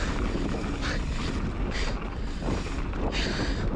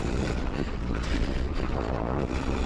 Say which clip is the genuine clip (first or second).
first